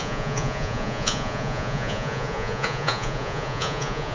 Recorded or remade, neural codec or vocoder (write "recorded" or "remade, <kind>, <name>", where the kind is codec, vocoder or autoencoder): remade, vocoder, Vocos